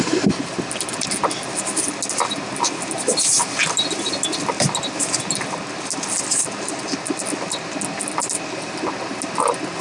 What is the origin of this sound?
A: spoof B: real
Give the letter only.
B